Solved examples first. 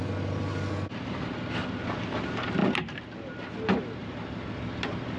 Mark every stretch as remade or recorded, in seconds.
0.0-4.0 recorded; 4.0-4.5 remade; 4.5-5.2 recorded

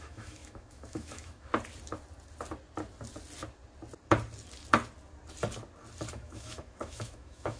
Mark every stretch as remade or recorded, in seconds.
0.0-1.5 remade; 1.5-6.1 recorded; 6.1-7.6 remade

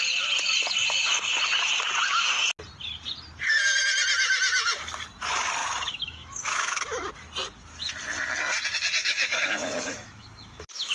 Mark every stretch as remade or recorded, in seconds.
0.0-5.6 recorded; 5.6-7.1 remade; 7.1-9.0 recorded; 9.0-10.9 remade

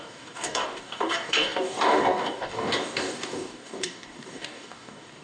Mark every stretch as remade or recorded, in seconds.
0.0-5.2 remade

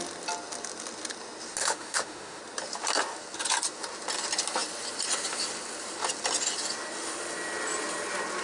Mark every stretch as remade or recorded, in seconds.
0.0-1.6 recorded; 1.6-2.4 remade; 2.4-8.4 recorded